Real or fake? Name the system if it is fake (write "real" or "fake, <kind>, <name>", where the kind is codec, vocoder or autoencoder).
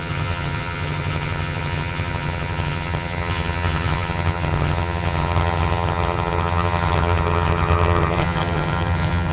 fake, vocoder, HiFi-GAN